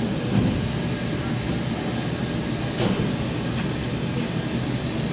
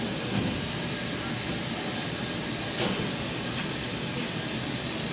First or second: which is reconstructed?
second